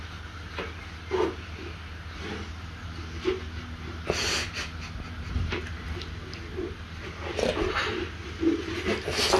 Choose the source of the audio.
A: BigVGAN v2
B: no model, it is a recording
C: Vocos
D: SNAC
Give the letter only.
B